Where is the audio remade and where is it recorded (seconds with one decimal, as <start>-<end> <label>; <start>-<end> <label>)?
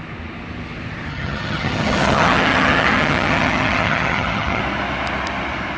0.0-1.1 recorded; 1.1-4.6 remade; 4.6-5.8 recorded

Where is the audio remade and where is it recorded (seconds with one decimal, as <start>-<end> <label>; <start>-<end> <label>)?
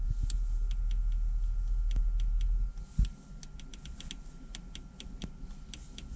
0.0-6.2 recorded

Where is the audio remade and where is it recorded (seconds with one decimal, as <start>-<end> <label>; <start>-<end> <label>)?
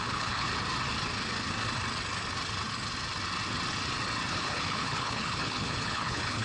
0.0-0.5 remade; 0.5-4.3 recorded; 4.3-6.4 remade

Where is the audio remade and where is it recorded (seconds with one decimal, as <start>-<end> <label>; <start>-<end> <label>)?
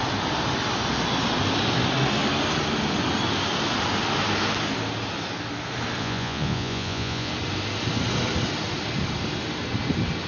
0.0-6.0 recorded; 6.0-7.3 remade; 7.3-10.3 recorded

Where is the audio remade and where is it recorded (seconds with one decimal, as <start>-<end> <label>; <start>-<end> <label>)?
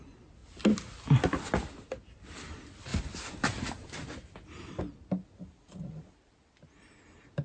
0.0-7.4 recorded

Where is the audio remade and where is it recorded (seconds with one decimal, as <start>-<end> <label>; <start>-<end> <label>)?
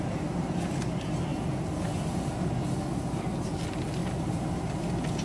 0.0-5.2 recorded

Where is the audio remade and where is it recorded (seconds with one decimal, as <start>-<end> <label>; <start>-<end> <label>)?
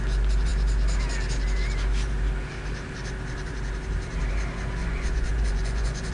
0.0-4.8 recorded; 4.8-6.1 remade